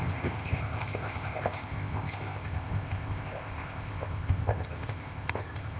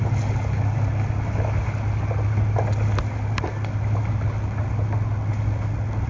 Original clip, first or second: second